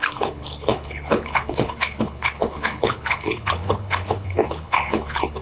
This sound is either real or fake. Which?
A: fake